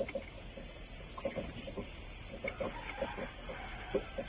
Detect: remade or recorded recorded